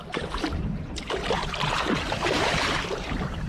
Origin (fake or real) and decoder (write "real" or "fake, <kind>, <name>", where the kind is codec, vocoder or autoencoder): fake, vocoder, BigVGAN v2